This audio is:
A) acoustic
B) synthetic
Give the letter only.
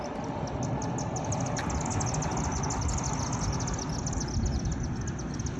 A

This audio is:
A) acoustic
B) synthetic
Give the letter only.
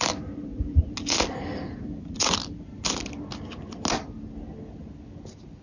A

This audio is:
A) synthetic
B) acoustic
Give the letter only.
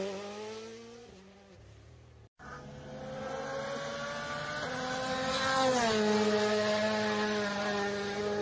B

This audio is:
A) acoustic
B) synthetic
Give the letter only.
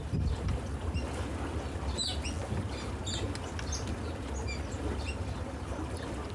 A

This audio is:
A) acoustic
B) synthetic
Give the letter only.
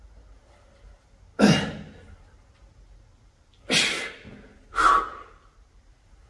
A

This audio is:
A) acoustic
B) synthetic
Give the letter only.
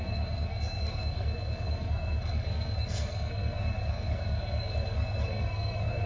B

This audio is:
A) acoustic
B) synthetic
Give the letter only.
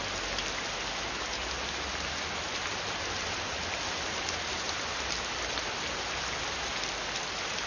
A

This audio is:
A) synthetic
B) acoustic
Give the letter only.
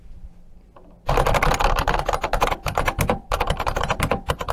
B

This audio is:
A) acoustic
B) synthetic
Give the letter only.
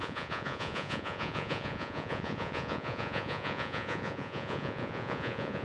B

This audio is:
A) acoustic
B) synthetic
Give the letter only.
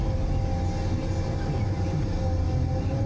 A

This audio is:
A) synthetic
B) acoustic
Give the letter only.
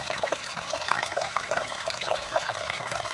A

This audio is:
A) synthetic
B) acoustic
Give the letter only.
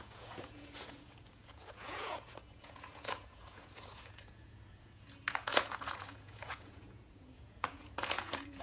A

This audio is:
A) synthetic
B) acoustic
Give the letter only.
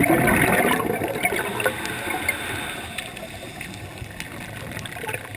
B